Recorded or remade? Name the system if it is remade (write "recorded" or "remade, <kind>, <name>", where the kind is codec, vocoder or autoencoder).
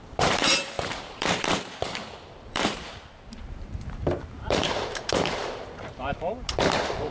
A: remade, vocoder, BigVGAN v2